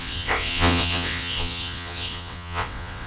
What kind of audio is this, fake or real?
fake